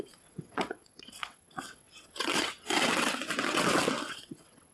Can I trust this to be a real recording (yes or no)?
no